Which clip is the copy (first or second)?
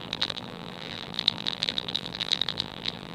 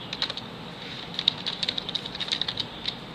first